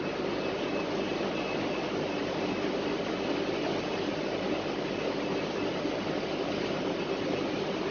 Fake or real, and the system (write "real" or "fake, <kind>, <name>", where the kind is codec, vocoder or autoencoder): real